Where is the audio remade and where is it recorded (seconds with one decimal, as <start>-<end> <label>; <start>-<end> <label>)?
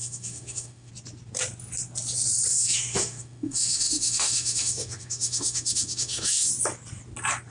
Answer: 0.0-0.9 remade; 0.9-2.5 recorded; 2.5-6.5 remade; 6.5-7.5 recorded